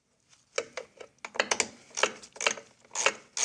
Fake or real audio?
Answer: real